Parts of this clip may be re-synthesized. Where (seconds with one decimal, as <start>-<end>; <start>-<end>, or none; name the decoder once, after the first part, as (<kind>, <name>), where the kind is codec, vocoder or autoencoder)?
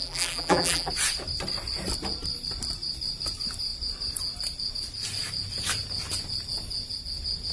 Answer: 0.0-0.9 (vocoder, BigVGAN v2)